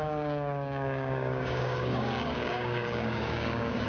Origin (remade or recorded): remade